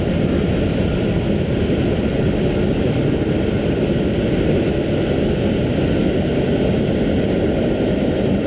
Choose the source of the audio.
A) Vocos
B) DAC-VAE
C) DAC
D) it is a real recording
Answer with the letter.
D